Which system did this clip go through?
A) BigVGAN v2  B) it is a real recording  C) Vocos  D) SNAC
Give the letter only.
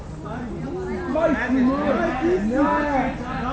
B